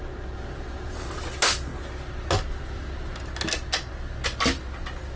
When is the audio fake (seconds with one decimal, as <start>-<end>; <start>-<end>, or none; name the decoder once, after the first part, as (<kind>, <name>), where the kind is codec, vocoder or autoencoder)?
none